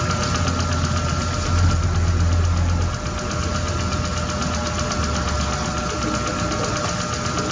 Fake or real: real